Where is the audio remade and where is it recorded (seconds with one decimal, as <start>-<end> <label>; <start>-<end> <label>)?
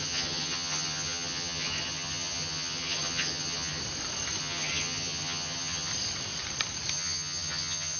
0.0-3.8 remade; 3.8-4.4 recorded; 4.4-5.9 remade; 5.9-6.9 recorded; 6.9-8.0 remade